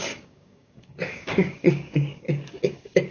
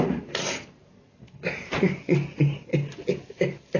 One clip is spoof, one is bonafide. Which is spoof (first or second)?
first